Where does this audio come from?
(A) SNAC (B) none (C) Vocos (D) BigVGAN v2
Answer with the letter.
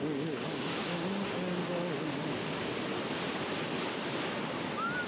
B